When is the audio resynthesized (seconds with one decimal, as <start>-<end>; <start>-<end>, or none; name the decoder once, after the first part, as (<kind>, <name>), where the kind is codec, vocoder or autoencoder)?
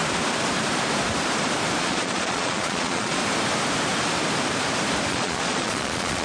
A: 1.8-3.2 (vocoder, Vocos); 5.1-6.2